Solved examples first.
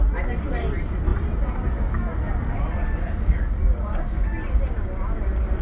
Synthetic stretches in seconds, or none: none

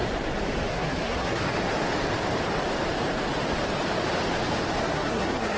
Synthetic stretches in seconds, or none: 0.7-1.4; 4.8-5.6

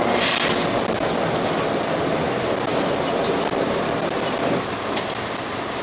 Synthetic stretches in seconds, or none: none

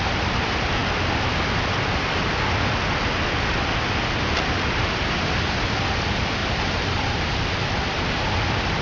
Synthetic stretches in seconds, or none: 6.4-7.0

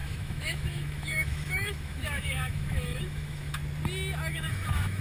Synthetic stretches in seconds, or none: 0.0-3.6; 4.3-5.0